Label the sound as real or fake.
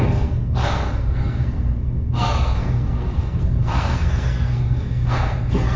fake